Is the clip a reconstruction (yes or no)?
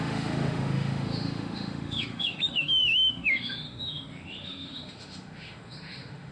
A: yes